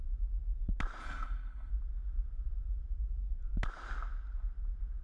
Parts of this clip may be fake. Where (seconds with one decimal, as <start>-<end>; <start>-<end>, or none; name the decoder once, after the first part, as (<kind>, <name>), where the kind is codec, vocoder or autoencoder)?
1.0-1.7 (codec, HILCodec)